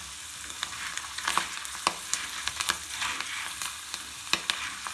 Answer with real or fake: real